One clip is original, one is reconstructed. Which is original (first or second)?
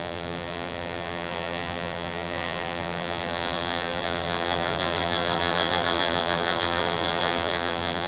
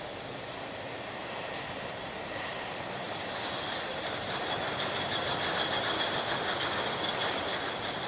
second